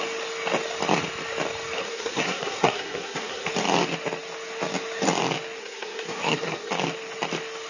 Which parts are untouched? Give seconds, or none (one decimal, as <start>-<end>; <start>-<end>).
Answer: 0.0-1.8; 3.5-5.6; 6.7-7.7

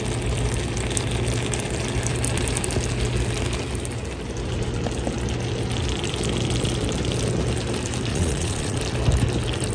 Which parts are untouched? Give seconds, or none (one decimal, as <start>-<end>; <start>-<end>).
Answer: 0.0-8.1; 8.8-9.7

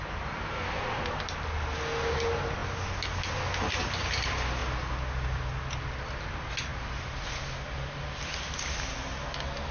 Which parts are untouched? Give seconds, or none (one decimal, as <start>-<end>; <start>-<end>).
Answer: 0.0-9.7

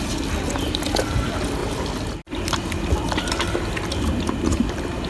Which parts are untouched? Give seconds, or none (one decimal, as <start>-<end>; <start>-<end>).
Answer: 0.0-5.1

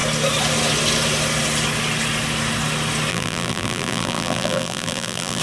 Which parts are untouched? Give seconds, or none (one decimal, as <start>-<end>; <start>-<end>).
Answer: 0.0-3.1